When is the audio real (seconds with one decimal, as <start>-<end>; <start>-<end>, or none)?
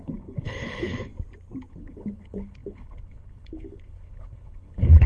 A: 1.1-1.7